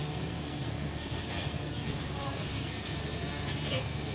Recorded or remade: remade